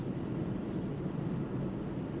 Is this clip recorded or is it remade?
recorded